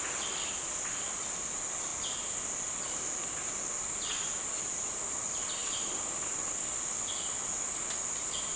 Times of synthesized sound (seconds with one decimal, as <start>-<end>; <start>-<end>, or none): none